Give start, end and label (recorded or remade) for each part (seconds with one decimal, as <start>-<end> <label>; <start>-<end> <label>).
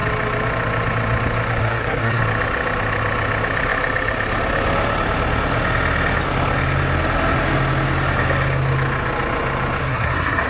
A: 0.0-1.6 recorded; 1.6-2.2 remade; 2.2-9.8 recorded; 9.8-10.5 remade